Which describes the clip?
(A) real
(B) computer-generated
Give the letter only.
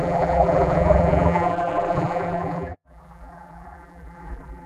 B